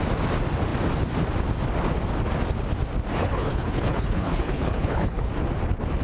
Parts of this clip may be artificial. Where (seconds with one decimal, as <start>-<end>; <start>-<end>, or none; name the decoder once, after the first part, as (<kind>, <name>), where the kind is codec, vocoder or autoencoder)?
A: 3.2-5.3 (codec, HILCodec)